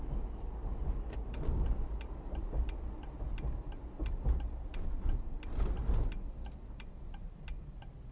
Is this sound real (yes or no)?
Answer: yes